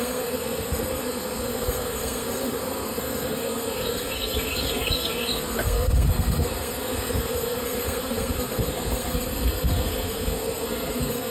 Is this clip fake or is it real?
fake